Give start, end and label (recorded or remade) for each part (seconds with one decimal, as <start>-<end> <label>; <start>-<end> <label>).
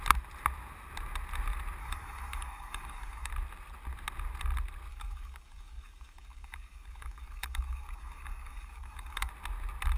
0.0-1.8 recorded; 1.8-3.3 remade; 3.3-4.9 recorded; 4.9-9.3 remade; 9.3-10.0 recorded